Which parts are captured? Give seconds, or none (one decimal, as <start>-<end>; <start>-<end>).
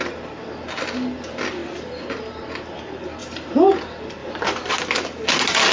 0.0-3.2; 3.7-4.2; 4.7-5.7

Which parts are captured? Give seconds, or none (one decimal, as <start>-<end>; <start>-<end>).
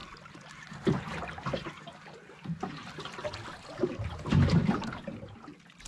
0.5-2.2; 4.1-5.9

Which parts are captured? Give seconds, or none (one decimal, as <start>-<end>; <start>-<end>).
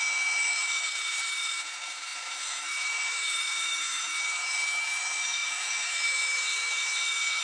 none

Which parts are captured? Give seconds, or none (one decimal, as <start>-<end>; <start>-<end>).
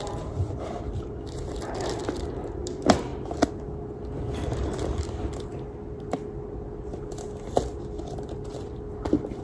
0.0-9.4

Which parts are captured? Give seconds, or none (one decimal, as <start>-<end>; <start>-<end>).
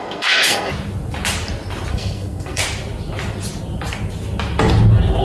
0.7-1.9; 2.6-5.2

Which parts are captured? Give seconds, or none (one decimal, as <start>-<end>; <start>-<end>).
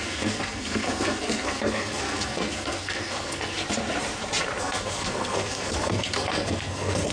3.6-4.6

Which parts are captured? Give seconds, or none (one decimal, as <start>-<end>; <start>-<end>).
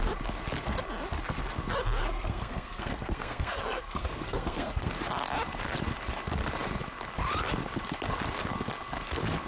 0.0-2.0; 4.9-9.5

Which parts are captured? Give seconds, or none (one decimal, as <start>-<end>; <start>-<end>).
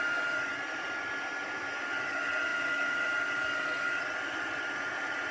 0.0-5.3